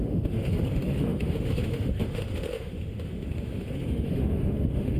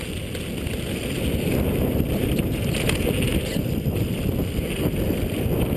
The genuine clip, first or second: second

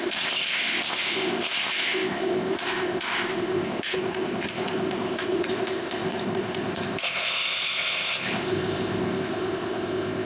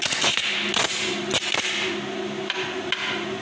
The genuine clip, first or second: second